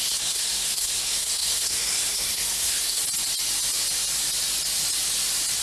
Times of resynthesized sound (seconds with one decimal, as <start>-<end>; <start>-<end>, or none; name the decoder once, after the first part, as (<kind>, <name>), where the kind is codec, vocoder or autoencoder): 0.0-3.0 (codec, SNAC)